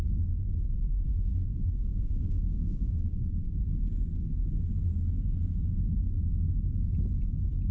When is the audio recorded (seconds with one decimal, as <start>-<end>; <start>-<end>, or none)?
0.0-0.9; 3.2-7.7